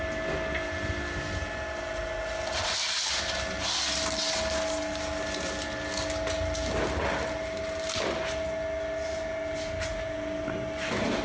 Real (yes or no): yes